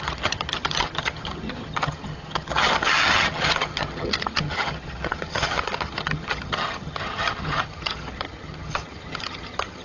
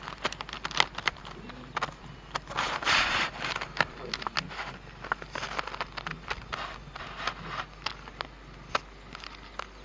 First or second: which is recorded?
second